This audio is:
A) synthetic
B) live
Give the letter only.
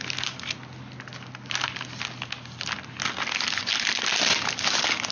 B